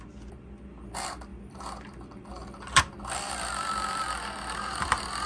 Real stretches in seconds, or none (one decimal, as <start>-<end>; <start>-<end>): 0.0-1.3; 2.8-5.3